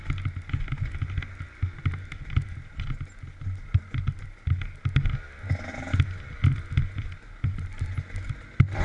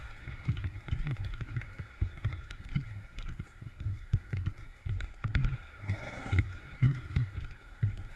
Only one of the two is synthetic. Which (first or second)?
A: second